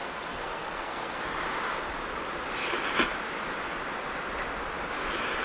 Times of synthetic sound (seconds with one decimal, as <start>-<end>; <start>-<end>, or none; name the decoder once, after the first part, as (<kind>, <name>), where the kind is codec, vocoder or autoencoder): 0.0-1.2 (codec, SNAC)